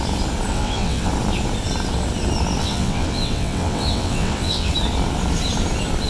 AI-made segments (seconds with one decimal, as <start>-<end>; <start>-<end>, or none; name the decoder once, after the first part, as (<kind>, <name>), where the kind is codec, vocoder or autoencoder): 0.5-1.1 (vocoder, WaveNeXt); 2.6-4.7